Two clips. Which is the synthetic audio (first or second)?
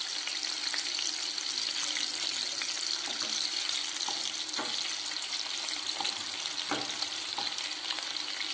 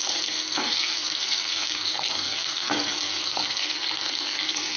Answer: second